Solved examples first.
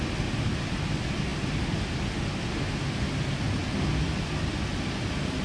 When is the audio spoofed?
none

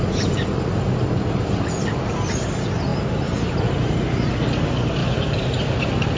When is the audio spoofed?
2.9-4.3 (vocoder, BigVGAN v2); 5.0-5.6

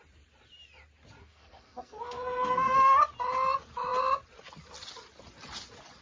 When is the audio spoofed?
1.2-3.0 (codec, SNAC)

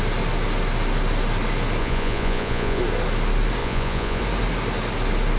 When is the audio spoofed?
1.8-2.8 (vocoder, Vocos); 3.6-4.2

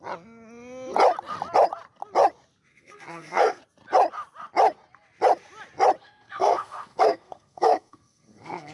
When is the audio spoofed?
2.7-3.6 (codec, SNAC); 6.0-8.7

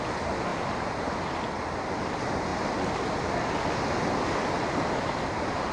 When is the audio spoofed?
none